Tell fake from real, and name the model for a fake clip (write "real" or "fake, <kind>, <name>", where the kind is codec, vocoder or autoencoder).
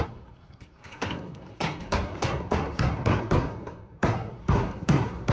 fake, codec, SNAC